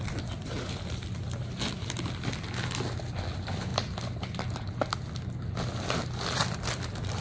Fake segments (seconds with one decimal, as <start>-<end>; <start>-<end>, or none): none